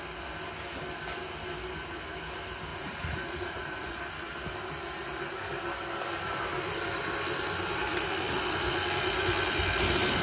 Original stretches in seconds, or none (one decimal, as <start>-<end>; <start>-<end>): 0.0-2.7; 4.0-10.2